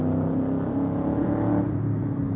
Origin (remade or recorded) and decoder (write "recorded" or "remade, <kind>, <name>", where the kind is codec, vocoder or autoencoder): recorded